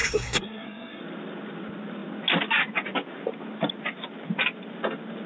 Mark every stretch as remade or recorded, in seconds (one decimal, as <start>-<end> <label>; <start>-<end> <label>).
0.0-1.0 remade; 1.0-5.3 recorded